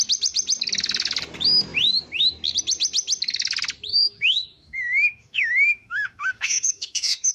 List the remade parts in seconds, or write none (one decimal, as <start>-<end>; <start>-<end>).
3.9-7.3